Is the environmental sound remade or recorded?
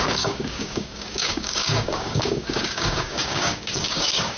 remade